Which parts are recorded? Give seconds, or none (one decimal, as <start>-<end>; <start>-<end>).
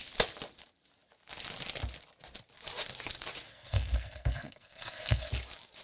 0.0-3.5; 5.3-5.8